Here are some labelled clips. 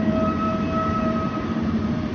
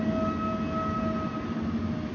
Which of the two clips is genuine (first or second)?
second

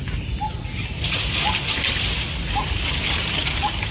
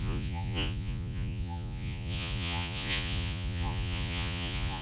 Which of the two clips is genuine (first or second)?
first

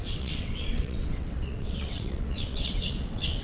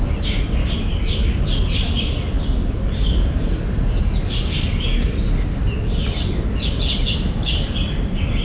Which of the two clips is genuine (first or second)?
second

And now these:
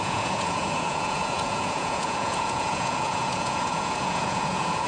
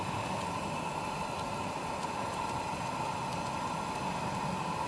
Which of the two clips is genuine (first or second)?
second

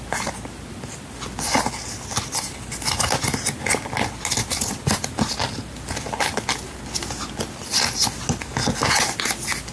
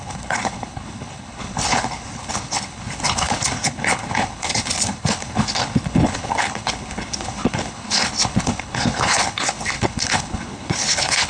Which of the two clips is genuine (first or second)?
first